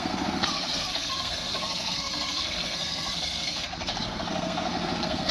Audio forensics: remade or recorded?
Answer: remade